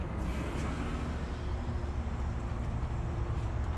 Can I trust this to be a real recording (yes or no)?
yes